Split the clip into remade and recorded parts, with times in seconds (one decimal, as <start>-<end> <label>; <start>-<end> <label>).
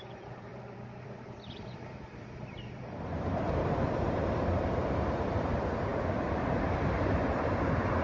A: 0.0-5.9 remade; 5.9-6.7 recorded; 6.7-8.0 remade